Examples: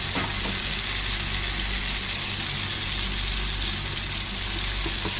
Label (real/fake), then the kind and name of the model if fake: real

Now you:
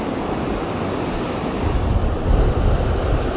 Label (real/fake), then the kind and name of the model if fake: real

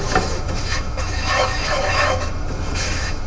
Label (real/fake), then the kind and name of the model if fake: fake, autoencoder, DAC-VAE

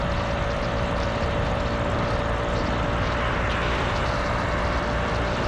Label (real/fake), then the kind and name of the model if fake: real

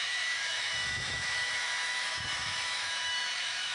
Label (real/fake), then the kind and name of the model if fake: fake, autoencoder, DAC-VAE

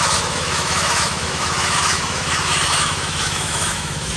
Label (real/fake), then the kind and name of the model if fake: fake, autoencoder, DAC-VAE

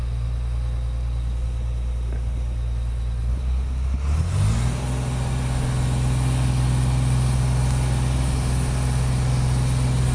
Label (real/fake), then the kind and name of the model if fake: real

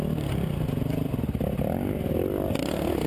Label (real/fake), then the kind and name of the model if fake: real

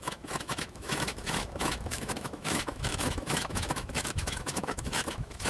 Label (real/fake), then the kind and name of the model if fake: fake, autoencoder, DAC-VAE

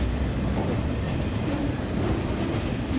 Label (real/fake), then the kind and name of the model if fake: real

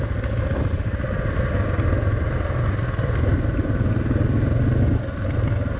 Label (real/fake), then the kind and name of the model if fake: real